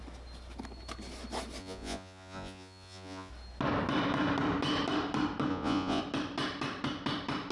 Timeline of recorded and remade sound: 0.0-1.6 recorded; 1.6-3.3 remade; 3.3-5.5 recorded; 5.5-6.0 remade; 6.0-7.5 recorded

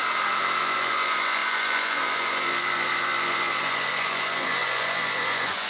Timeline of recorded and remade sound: 0.0-0.6 recorded; 0.6-5.7 remade

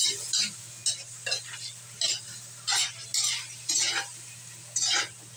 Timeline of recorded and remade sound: 0.0-5.4 recorded

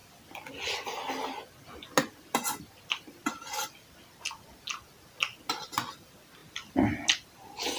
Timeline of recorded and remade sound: 0.0-7.8 recorded

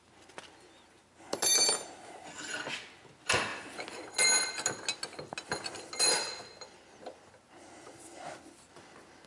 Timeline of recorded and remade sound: 0.0-9.3 recorded

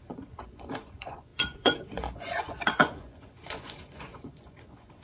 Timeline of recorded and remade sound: 0.0-5.0 remade